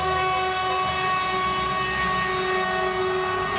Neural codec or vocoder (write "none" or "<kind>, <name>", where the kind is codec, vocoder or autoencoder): none